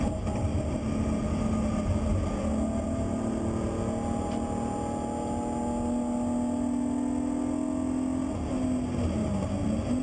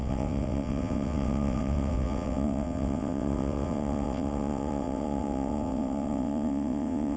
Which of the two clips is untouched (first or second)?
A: first